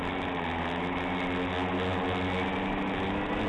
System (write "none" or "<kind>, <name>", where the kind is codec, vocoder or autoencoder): none